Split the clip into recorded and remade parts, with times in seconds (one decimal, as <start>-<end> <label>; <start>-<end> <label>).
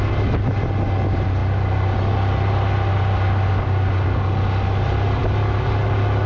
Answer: 0.0-6.3 recorded